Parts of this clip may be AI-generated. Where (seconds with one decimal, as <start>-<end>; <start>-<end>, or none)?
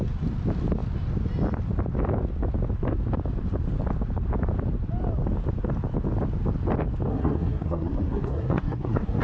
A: 7.1-9.2